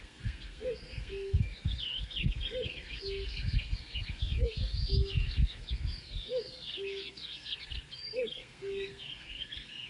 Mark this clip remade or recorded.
remade